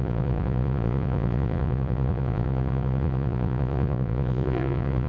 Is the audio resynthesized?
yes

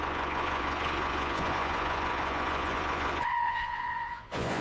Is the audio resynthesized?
yes